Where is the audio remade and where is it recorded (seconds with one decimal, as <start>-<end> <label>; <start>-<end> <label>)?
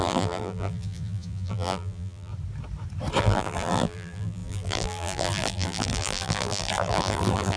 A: 0.0-2.3 remade; 2.3-3.2 recorded; 3.2-7.6 remade